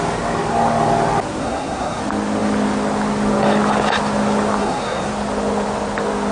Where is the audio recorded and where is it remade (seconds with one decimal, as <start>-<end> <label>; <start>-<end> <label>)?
0.0-1.4 recorded; 1.4-2.0 remade; 2.0-4.6 recorded; 4.6-5.1 remade; 5.1-6.3 recorded